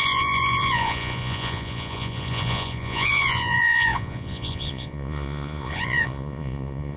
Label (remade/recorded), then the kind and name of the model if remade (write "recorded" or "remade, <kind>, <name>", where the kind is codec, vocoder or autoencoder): remade, vocoder, Vocos